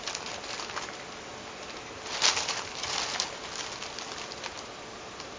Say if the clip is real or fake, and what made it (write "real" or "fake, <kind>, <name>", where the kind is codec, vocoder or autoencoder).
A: real